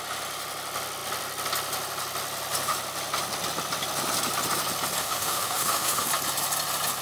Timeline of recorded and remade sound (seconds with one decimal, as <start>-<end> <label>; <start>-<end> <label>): 0.0-5.0 recorded; 5.0-6.1 remade; 6.1-7.0 recorded